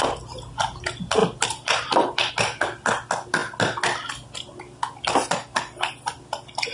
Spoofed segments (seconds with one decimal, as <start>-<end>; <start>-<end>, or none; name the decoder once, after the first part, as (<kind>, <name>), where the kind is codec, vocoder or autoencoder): 1.2-2.3 (vocoder, BigVGAN v2)

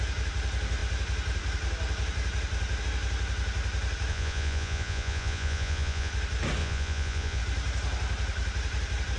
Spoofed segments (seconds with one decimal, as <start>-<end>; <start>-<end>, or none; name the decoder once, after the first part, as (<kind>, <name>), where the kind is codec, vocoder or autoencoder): 4.1-6.1 (vocoder, Vocos); 6.6-7.4

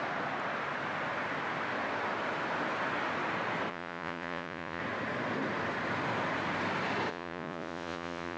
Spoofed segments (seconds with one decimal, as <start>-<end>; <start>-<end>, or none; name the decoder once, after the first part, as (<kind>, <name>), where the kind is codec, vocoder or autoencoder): 3.7-4.8 (vocoder, Vocos); 7.1-8.4

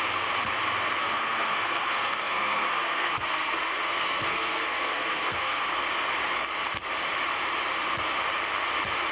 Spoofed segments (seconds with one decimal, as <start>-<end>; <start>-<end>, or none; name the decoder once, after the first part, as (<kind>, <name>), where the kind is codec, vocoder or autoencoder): 1.0-5.6 (codec, SNAC)

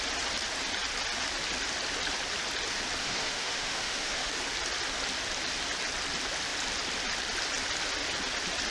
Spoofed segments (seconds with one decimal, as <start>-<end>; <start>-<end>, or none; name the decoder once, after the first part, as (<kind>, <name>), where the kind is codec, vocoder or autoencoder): 3.0-4.3 (autoencoder, DAC-VAE)